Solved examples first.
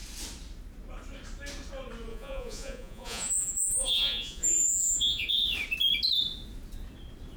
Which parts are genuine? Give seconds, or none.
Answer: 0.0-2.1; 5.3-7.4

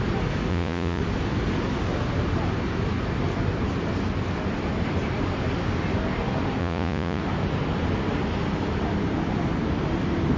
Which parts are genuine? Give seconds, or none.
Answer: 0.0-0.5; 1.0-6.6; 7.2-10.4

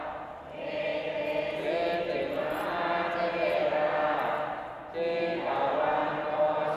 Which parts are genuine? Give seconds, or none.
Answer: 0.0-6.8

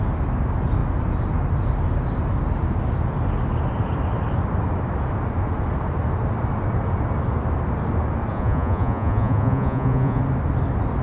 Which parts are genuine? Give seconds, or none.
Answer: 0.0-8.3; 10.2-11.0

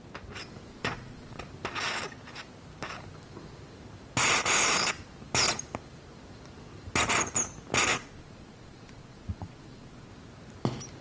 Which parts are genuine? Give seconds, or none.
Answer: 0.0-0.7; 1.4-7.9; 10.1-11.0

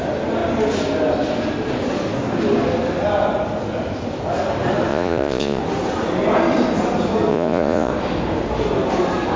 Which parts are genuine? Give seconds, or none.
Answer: 0.0-4.9; 5.6-7.3; 7.9-9.4